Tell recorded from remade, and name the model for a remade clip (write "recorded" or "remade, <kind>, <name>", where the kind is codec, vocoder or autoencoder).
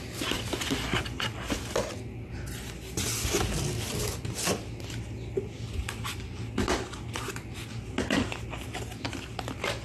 recorded